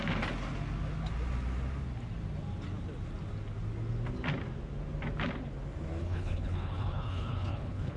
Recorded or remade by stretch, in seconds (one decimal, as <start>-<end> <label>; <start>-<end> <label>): 0.0-6.0 recorded; 6.0-8.0 remade